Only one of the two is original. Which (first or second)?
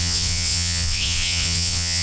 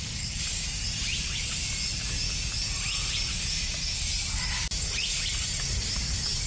second